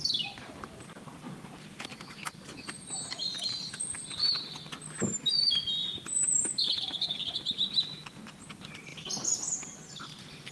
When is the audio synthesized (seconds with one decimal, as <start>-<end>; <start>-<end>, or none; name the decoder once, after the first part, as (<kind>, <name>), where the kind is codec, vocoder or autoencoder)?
none